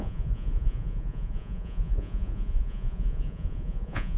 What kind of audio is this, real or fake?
fake